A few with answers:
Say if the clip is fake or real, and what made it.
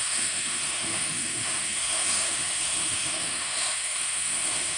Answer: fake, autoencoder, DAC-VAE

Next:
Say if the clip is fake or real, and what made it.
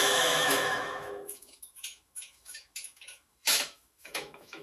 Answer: fake, autoencoder, DAC-VAE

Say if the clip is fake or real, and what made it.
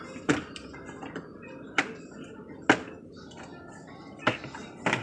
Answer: real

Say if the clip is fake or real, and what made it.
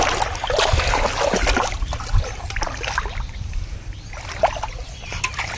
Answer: real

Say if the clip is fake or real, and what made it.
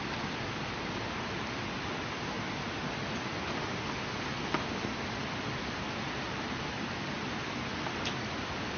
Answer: real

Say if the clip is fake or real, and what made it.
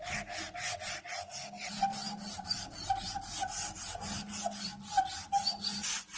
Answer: real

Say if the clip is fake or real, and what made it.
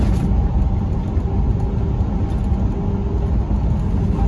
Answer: real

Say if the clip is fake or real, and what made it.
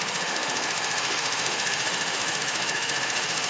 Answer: fake, autoencoder, DAC-VAE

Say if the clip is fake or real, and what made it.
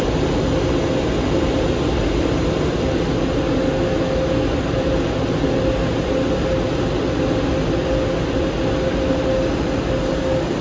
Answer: real